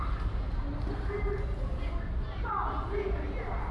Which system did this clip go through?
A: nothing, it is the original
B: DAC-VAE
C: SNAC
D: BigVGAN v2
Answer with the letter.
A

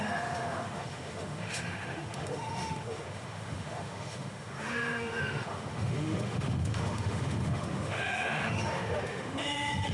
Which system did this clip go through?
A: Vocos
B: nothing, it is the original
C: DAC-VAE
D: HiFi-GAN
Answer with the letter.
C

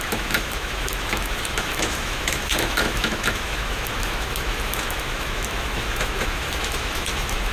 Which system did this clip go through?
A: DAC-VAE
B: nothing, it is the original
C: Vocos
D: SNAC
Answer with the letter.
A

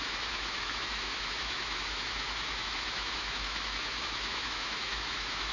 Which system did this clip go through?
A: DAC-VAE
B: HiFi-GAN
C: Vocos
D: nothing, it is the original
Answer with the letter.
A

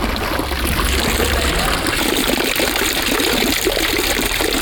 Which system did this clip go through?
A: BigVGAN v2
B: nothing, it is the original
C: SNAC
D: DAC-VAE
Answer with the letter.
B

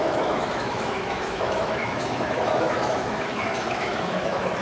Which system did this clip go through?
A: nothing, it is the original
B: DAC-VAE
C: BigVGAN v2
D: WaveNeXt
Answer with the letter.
B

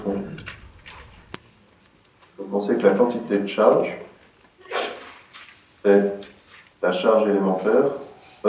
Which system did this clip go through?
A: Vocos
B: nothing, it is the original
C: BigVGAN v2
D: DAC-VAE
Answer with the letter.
B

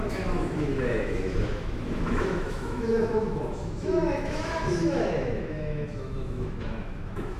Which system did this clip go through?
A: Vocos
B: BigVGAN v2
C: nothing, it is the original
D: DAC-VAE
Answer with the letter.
D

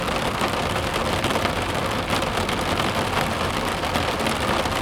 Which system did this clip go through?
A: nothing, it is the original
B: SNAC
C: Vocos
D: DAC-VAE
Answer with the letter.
A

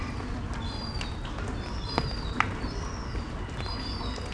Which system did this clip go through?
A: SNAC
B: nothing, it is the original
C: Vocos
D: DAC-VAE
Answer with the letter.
B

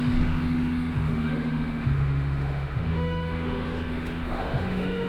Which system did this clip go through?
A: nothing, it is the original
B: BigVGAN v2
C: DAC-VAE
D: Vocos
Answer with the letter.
C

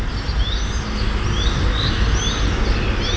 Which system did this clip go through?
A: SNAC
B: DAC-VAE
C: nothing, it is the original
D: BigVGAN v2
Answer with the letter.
C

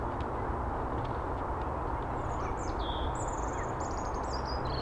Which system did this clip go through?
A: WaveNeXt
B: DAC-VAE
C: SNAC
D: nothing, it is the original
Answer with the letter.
D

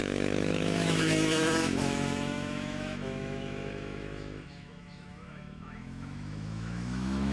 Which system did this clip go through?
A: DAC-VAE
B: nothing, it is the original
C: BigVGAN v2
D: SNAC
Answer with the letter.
A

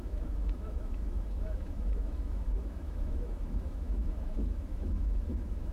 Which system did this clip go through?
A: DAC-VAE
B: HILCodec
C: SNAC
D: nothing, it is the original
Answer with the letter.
A